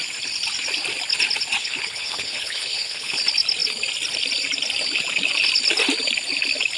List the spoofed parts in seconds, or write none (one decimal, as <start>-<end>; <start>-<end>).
1.6-3.2